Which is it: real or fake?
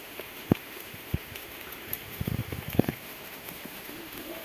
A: fake